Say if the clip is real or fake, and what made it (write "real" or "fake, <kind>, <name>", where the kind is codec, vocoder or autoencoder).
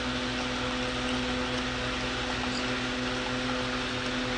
real